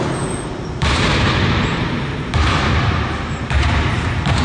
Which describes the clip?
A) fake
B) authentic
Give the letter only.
A